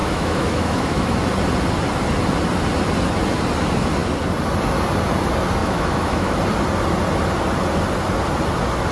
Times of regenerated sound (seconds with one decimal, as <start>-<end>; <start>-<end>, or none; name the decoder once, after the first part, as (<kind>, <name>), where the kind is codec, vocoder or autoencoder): 0.0-1.2 (autoencoder, DAC-VAE); 5.6-6.4